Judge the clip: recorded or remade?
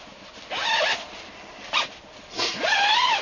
recorded